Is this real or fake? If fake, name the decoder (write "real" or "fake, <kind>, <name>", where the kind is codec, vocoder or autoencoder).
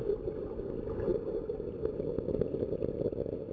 real